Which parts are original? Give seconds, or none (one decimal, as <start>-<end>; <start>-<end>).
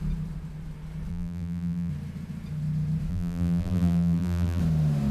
0.0-1.1; 1.9-3.1; 4.6-5.1